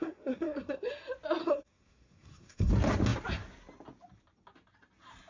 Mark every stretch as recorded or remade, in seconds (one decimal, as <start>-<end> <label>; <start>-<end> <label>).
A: 0.0-0.9 remade; 0.9-1.4 recorded; 1.4-2.7 remade; 2.7-5.3 recorded